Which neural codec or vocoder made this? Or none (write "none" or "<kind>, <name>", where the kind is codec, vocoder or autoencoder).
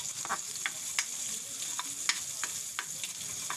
none